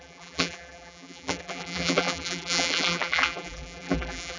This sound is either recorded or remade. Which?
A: remade